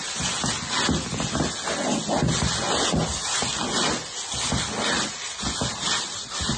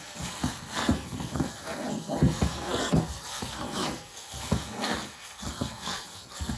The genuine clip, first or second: first